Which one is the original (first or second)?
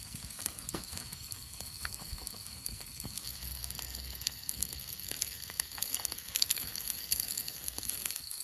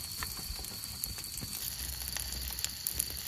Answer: second